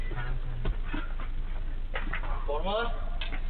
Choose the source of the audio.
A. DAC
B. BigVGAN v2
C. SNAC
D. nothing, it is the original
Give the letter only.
D